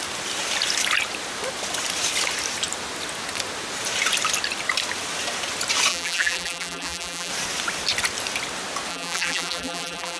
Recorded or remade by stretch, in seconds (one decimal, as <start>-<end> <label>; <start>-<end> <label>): 0.0-5.9 recorded; 5.9-7.3 remade; 7.3-8.9 recorded; 8.9-10.2 remade